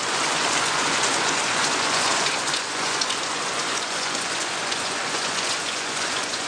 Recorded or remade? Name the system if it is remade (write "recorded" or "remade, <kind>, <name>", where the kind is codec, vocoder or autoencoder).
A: remade, vocoder, Vocos